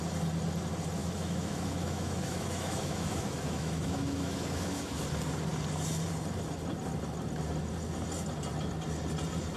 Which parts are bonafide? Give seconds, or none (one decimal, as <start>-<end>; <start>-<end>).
0.0-1.0; 5.0-9.6